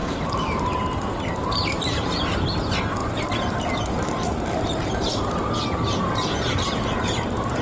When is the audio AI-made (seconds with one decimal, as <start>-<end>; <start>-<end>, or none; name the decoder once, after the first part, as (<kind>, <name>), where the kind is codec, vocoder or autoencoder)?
0.0-0.8 (vocoder, BigVGAN v2); 1.3-2.1; 3.0-3.6; 4.8-7.6